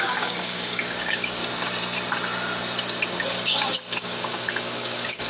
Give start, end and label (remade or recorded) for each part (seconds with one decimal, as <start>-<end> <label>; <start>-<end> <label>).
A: 0.0-1.4 remade; 1.4-4.0 recorded; 4.0-5.3 remade